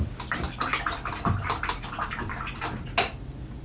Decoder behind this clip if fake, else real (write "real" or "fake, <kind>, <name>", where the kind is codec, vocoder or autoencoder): real